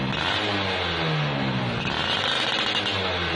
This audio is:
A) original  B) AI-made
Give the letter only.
A